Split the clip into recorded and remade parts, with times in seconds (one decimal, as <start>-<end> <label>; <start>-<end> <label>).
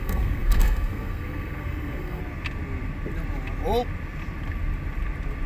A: 0.0-2.2 remade; 2.2-5.5 recorded